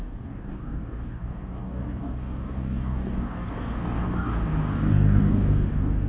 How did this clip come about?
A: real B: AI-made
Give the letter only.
B